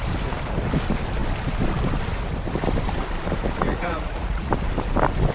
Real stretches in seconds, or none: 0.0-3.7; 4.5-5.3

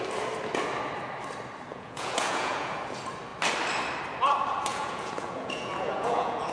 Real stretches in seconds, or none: 0.0-1.7; 2.8-4.7

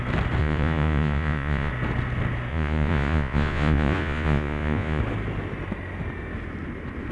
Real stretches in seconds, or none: 0.0-0.4; 1.7-2.5; 5.0-7.1